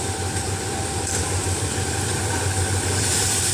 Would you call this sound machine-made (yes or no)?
yes